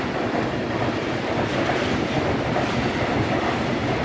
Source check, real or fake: real